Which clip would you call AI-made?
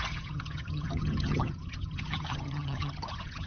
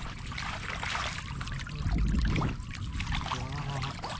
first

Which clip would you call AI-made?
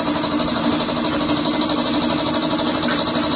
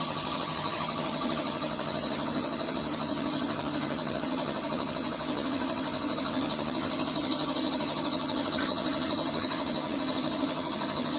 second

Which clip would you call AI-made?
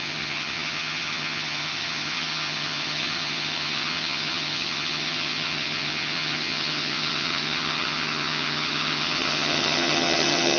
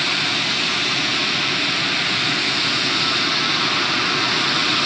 first